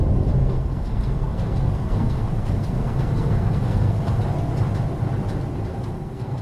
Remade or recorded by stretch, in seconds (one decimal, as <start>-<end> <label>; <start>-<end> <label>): 0.0-0.4 recorded; 0.4-4.2 remade; 4.2-5.7 recorded; 5.7-6.4 remade